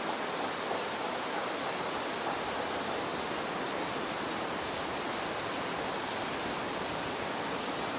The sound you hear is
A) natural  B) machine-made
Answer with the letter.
A